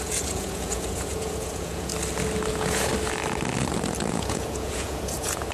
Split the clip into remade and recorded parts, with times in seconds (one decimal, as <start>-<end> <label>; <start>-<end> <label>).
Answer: 0.0-1.9 remade; 1.9-2.5 recorded; 2.5-2.9 remade; 2.9-4.1 recorded; 4.1-5.5 remade